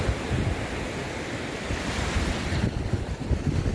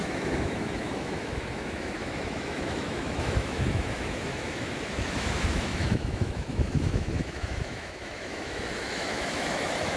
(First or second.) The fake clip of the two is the second